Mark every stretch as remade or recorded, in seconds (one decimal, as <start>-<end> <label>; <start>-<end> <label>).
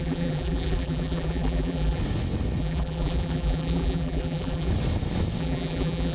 0.0-2.0 remade; 2.0-2.6 recorded; 2.6-4.7 remade; 4.7-5.4 recorded; 5.4-6.1 remade